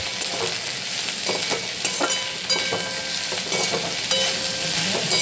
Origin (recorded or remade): recorded